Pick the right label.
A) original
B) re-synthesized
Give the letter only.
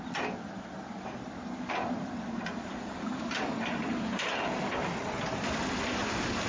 A